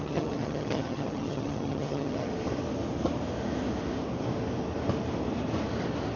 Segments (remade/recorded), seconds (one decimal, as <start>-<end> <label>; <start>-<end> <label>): 0.0-2.3 remade; 2.3-6.2 recorded